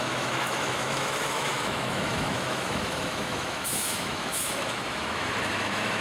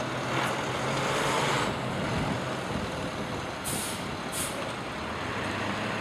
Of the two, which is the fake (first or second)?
first